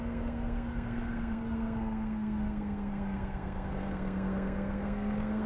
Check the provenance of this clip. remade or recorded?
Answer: remade